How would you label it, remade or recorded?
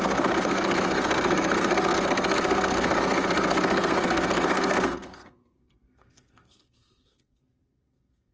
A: remade